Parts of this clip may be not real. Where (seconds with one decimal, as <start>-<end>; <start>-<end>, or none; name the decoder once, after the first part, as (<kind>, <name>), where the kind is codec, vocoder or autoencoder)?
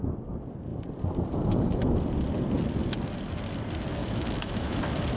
4.0-4.8 (autoencoder, DAC-VAE)